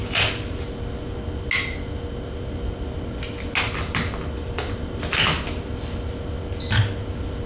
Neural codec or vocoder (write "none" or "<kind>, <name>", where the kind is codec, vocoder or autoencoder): none